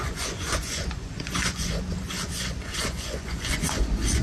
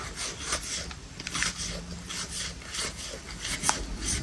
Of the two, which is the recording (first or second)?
second